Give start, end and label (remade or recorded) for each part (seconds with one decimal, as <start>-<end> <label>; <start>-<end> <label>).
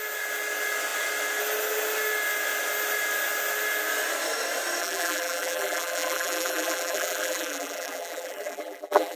0.0-4.8 recorded; 4.8-9.2 remade